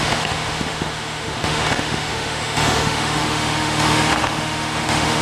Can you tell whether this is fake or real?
fake